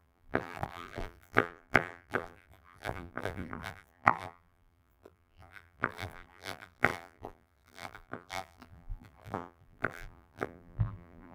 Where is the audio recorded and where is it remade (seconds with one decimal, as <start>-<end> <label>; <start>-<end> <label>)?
0.0-11.3 remade